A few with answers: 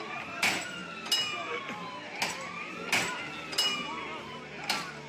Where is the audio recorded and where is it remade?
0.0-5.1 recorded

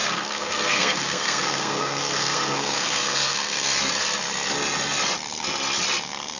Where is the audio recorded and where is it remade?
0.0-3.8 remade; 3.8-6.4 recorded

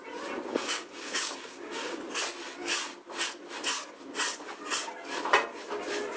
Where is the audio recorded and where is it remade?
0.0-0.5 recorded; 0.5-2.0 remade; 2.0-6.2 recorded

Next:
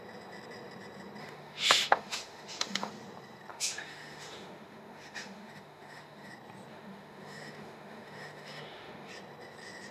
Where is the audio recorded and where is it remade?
0.0-1.2 recorded; 1.2-2.9 remade; 2.9-3.5 recorded; 3.5-6.3 remade; 6.3-6.7 recorded; 6.7-9.1 remade; 9.1-9.9 recorded

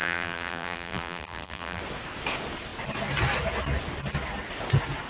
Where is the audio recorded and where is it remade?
0.0-1.8 remade; 1.8-5.1 recorded

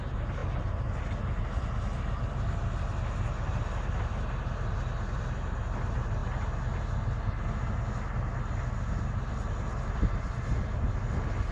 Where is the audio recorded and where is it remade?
0.0-11.5 recorded